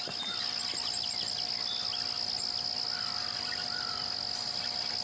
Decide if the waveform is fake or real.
real